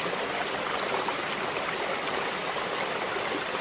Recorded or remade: recorded